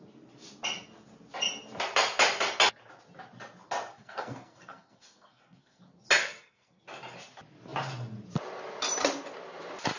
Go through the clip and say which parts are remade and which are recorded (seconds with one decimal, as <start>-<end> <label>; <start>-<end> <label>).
0.0-3.9 recorded; 3.9-5.8 remade; 5.8-6.2 recorded; 6.2-6.8 remade; 6.8-10.0 recorded